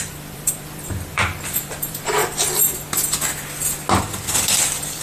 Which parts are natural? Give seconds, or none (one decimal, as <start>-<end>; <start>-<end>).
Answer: 2.2-4.0